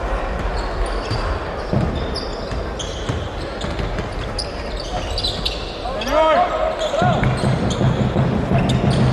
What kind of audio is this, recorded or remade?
recorded